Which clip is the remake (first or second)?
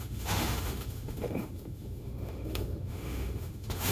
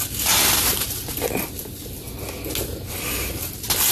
first